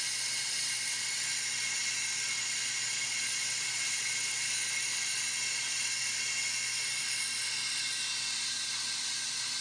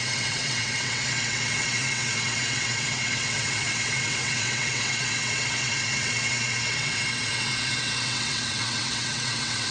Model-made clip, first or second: second